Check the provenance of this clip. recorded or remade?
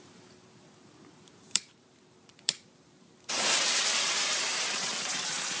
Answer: remade